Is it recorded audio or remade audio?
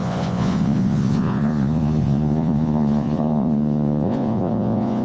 remade